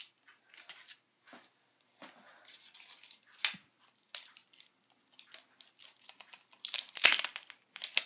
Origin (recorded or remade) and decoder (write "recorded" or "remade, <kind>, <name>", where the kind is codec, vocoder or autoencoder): recorded